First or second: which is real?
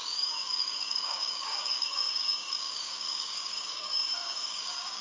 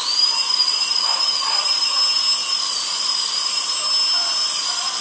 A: second